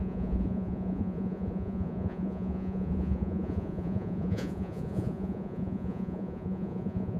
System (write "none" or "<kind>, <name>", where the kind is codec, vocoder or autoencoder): vocoder, Vocos